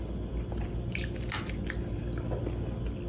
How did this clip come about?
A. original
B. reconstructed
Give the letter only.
A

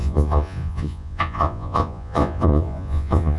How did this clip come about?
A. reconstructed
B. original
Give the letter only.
A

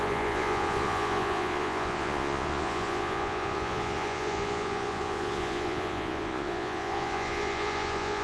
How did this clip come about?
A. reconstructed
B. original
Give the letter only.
A